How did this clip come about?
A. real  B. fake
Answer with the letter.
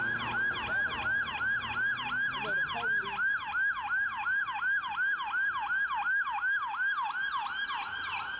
A